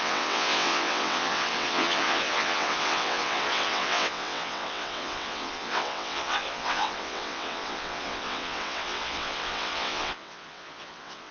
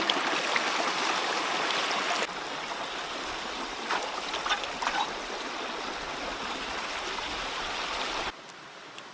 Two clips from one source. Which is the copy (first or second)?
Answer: first